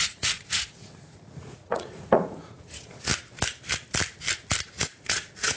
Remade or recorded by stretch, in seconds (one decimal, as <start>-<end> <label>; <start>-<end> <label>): 0.0-3.1 remade; 3.1-4.8 recorded; 4.8-5.6 remade